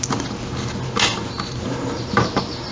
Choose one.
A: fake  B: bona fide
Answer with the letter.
B